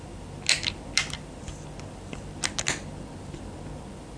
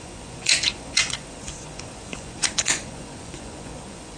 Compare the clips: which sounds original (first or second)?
first